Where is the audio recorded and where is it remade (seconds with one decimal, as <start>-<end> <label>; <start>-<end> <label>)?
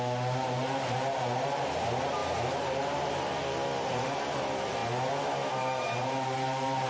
0.0-2.2 remade; 2.2-2.7 recorded; 2.7-4.8 remade; 4.8-5.5 recorded; 5.5-6.9 remade